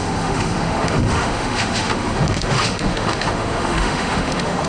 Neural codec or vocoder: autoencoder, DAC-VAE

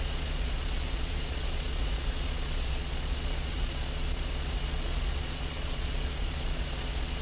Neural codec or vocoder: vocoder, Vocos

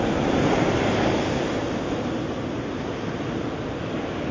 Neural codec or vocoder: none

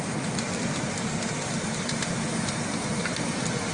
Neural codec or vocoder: none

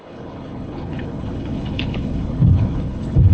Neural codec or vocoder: codec, HILCodec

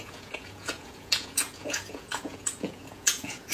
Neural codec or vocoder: vocoder, Vocos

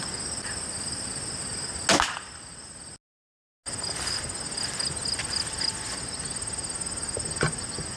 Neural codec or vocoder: none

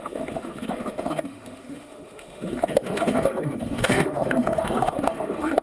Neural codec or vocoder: autoencoder, DAC-VAE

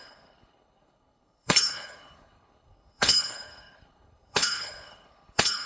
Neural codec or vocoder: codec, HILCodec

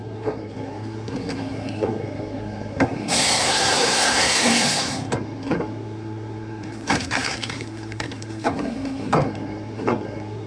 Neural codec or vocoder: codec, SNAC